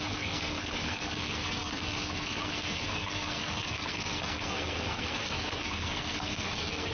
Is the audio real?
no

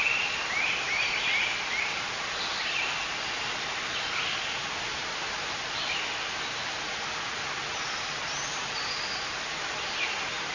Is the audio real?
yes